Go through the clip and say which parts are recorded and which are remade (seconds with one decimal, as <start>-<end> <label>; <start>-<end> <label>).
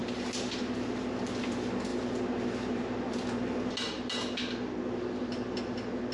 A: 0.0-6.1 recorded